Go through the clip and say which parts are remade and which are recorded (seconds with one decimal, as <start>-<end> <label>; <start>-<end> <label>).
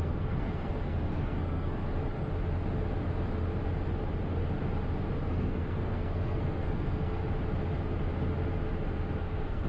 0.0-1.8 remade; 1.8-5.3 recorded; 5.3-7.2 remade; 7.2-9.2 recorded; 9.2-9.7 remade